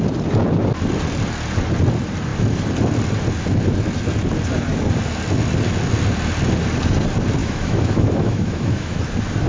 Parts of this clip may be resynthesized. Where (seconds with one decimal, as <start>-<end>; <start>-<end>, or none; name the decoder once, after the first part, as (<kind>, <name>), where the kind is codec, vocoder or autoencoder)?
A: 7.4-9.0 (autoencoder, DAC-VAE)